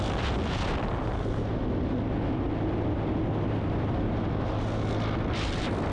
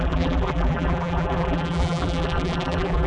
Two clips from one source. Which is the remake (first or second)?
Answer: second